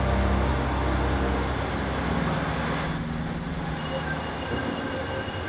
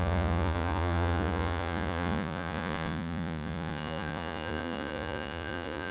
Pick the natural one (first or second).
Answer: first